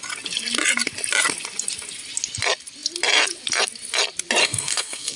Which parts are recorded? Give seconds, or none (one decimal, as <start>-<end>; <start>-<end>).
0.0-4.4